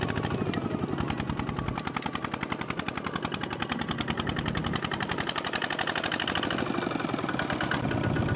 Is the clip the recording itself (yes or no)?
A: yes